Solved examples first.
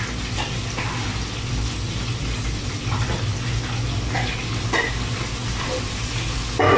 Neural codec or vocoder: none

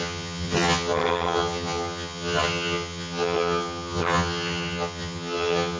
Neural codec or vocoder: vocoder, HiFi-GAN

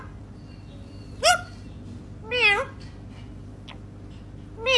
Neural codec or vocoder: none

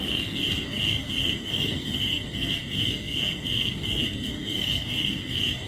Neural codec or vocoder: codec, SNAC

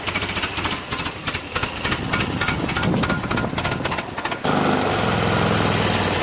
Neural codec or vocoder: none